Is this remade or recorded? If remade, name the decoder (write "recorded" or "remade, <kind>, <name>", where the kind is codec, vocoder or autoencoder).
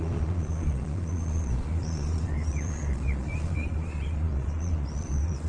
remade, vocoder, Vocos